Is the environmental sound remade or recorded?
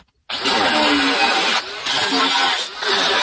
recorded